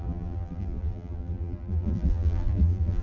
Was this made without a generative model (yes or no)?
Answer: no